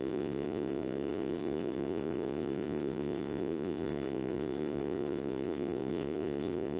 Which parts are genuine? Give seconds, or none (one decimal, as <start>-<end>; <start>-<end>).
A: none